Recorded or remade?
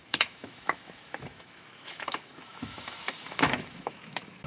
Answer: remade